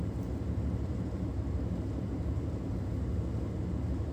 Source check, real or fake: fake